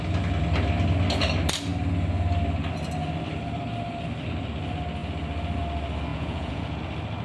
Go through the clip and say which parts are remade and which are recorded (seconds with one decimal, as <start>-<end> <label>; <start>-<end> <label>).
0.0-6.1 recorded; 6.1-6.8 remade; 6.8-7.2 recorded

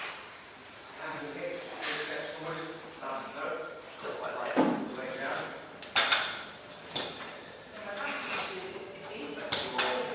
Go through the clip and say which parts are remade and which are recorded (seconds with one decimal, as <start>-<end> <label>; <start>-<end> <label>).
0.0-0.6 recorded; 0.6-1.2 remade; 1.2-10.1 recorded

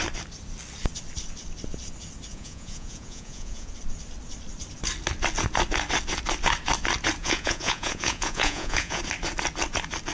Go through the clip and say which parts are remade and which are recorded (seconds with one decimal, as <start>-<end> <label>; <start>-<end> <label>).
0.0-2.3 recorded; 2.3-3.7 remade; 3.7-7.2 recorded; 7.2-9.0 remade; 9.0-10.1 recorded

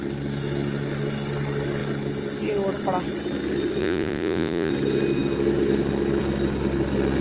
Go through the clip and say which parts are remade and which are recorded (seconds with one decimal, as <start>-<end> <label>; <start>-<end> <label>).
0.0-3.8 recorded; 3.8-4.7 remade; 4.7-7.2 recorded